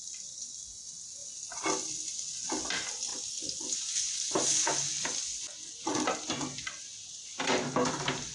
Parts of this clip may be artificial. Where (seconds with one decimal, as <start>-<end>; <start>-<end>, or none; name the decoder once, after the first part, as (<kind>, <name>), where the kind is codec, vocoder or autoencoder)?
none